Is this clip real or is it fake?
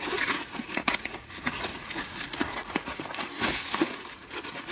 fake